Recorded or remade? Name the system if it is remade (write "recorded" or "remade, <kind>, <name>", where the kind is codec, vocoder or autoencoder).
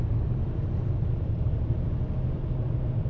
recorded